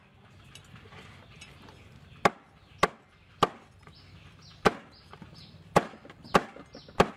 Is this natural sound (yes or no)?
yes